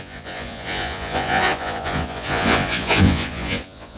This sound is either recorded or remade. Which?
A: remade